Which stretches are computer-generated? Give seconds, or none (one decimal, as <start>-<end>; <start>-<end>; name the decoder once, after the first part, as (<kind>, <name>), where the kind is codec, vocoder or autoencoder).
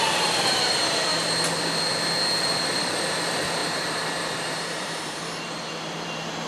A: 0.0-1.1 (vocoder, BigVGAN v2); 2.4-6.5